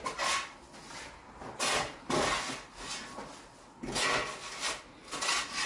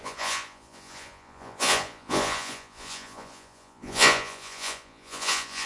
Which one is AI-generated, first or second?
second